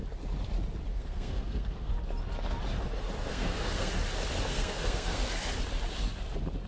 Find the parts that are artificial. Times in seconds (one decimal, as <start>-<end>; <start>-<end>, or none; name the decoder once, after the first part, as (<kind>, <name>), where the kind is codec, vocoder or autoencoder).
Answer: 0.9-1.9 (codec, SNAC); 3.3-3.9; 4.5-5.3